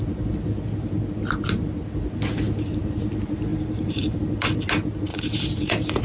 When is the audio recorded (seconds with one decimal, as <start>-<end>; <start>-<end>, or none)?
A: 0.0-3.5; 4.2-5.1